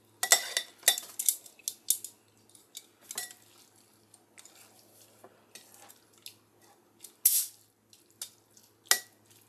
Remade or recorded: recorded